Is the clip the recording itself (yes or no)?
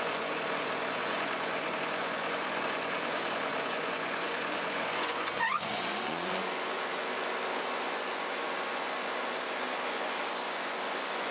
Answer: no